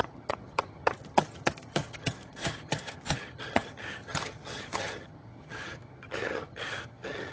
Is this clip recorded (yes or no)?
no